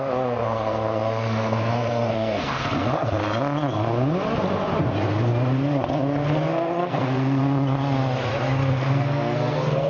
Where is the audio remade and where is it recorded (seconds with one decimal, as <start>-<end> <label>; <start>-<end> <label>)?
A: 0.0-3.2 remade; 3.2-6.5 recorded; 6.5-7.4 remade; 7.4-8.7 recorded; 8.7-9.9 remade